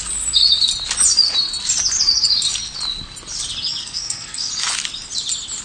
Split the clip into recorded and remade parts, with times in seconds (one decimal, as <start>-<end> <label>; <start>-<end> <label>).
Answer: 0.0-3.8 recorded; 3.8-4.5 remade; 4.5-5.6 recorded